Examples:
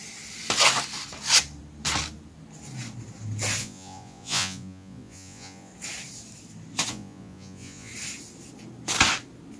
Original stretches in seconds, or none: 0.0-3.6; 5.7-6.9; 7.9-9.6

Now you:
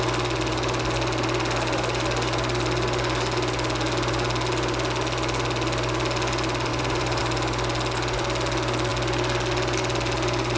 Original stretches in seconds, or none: 0.0-6.7; 7.2-10.6

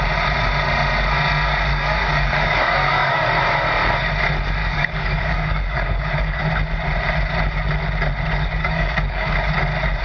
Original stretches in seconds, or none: 0.0-1.7; 3.3-4.6; 6.4-8.6; 9.5-10.0

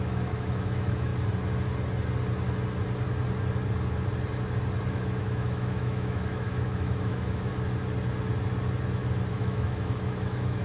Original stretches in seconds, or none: 1.1-4.9; 7.5-9.3

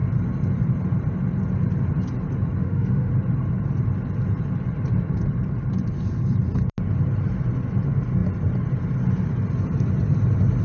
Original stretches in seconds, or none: 0.0-2.6; 3.1-10.6

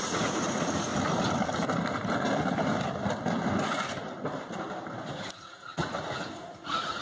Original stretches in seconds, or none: 0.9-5.1

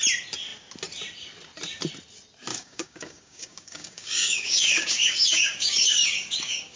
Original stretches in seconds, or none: 0.0-2.5

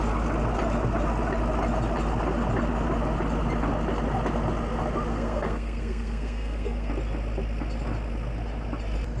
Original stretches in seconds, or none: 0.0-5.1; 6.9-9.2